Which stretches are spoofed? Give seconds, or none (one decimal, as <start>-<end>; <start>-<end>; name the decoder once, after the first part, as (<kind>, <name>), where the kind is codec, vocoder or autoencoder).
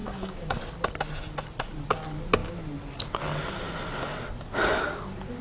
0.0-0.6 (autoencoder, DAC-VAE)